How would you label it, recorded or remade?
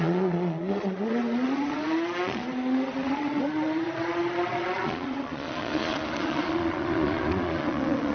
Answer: remade